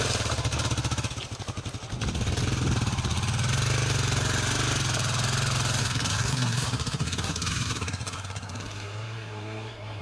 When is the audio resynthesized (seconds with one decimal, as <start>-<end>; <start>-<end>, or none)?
5.8-10.0